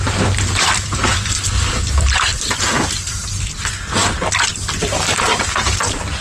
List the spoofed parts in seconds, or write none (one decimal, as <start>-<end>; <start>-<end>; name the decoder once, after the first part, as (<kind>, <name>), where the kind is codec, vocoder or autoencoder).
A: 0.0-4.0 (vocoder, BigVGAN v2); 5.5-6.2